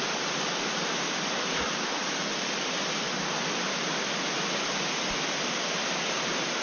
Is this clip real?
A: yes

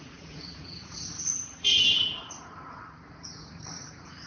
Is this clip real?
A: no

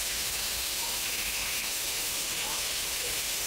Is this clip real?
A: no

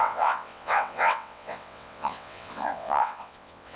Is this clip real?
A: no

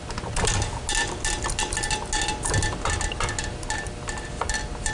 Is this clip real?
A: yes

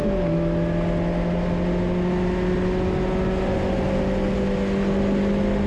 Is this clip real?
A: yes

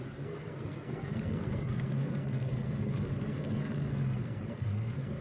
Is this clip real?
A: no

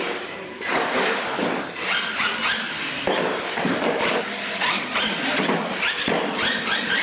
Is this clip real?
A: yes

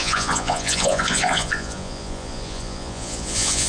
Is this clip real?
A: no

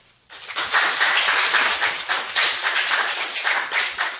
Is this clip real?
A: yes